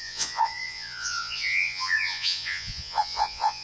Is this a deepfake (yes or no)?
yes